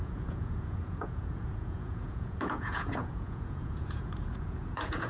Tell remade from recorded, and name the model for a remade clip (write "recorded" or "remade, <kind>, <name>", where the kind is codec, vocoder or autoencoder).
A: remade, vocoder, Vocos